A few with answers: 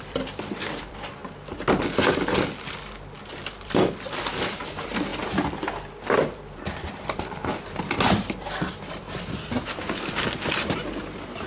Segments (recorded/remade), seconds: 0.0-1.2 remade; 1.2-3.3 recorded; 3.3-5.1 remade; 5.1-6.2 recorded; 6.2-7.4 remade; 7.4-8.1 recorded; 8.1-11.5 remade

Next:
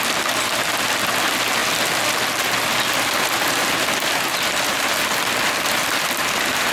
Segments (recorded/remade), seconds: 0.0-6.7 recorded

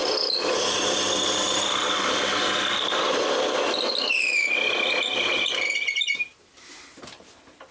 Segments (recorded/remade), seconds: 0.0-7.7 recorded

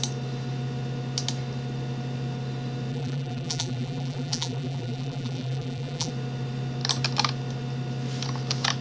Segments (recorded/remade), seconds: 0.0-2.9 recorded; 2.9-6.1 remade; 6.1-8.8 recorded

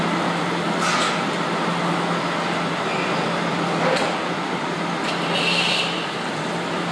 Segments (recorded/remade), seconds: 0.0-3.5 recorded; 3.5-4.7 remade; 4.7-6.9 recorded